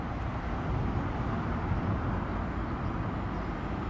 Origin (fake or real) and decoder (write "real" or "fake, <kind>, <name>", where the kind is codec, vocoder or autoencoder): real